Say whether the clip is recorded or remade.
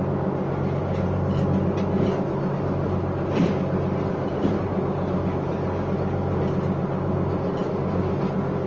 recorded